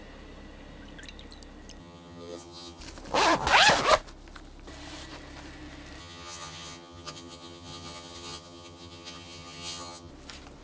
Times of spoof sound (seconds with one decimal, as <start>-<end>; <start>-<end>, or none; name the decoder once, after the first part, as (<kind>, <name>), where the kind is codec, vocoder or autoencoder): 1.8-2.8 (vocoder, HiFi-GAN); 6.0-10.1